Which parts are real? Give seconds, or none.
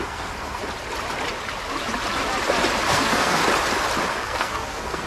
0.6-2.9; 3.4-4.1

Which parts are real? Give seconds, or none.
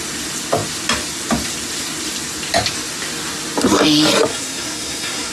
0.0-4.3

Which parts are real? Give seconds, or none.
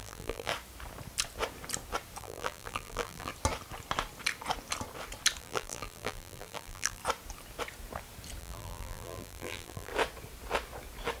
0.5-2.2; 3.3-5.4; 7.0-8.4; 9.9-11.2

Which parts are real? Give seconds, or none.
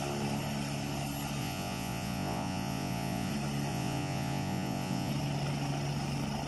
0.0-1.4; 3.3-3.7; 5.1-6.5